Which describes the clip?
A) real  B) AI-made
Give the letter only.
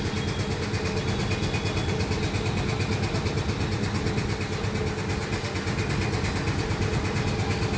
A